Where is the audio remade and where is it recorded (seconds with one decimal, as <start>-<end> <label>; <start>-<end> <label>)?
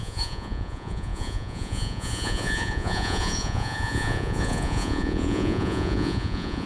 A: 0.0-6.7 remade